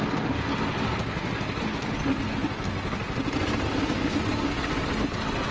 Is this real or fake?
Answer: real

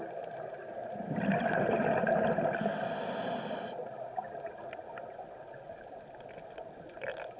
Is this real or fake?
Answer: real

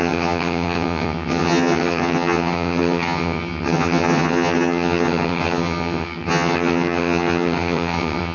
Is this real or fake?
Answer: fake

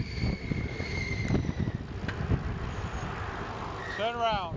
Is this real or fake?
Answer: real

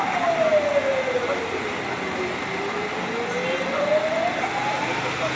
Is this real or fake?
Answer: real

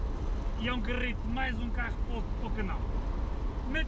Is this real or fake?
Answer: real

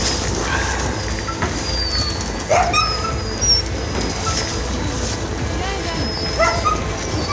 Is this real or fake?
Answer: real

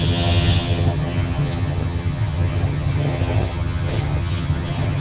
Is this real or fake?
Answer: fake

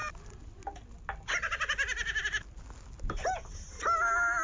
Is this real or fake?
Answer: real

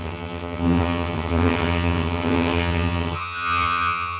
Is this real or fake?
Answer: fake